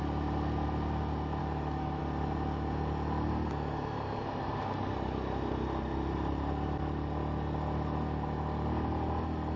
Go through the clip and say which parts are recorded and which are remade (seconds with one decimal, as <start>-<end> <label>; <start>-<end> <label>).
0.0-1.4 recorded; 1.4-2.0 remade; 2.0-9.6 recorded